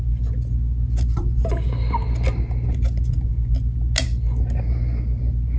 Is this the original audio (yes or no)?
yes